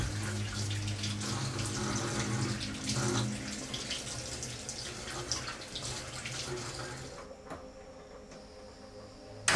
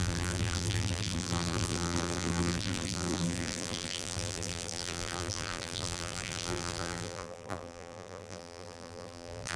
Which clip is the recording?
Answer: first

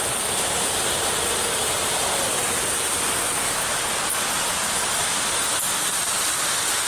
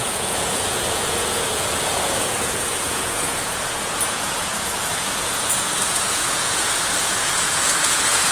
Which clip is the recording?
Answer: first